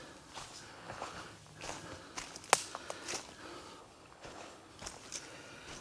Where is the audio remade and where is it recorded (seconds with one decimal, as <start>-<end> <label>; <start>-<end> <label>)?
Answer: 0.0-0.7 recorded; 0.7-1.2 remade; 1.2-3.8 recorded; 3.8-4.7 remade; 4.7-5.8 recorded